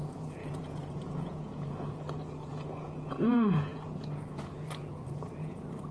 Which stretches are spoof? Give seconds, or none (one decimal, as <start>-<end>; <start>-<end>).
0.0-5.9